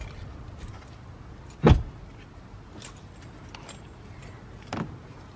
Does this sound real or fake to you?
real